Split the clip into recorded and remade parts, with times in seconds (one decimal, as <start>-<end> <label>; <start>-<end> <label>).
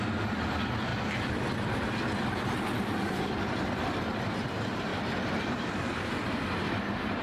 0.0-0.9 recorded; 0.9-4.0 remade; 4.0-4.9 recorded; 4.9-5.5 remade; 5.5-7.2 recorded